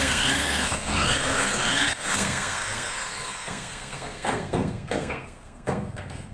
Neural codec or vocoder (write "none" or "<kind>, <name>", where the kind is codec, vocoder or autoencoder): codec, SNAC